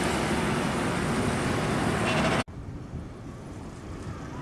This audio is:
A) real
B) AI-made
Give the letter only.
A